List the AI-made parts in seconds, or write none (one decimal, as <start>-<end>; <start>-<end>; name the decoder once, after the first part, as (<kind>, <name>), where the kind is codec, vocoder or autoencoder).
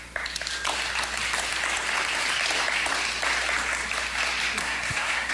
4.6-5.3 (codec, SNAC)